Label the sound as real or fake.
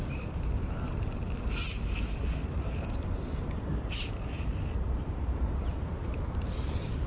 fake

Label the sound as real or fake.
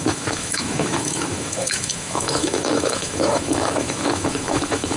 fake